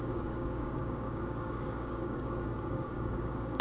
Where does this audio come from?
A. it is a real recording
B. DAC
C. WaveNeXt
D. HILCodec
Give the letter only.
B